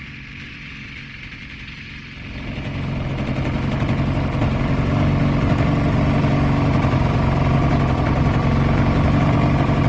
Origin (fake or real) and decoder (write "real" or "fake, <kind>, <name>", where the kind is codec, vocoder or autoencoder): real